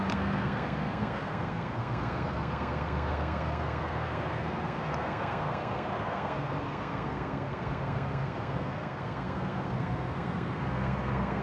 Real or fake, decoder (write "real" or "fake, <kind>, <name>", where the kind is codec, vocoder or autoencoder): fake, codec, SNAC